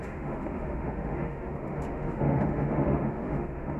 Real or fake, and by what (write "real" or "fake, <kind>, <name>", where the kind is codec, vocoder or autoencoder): fake, autoencoder, DAC-VAE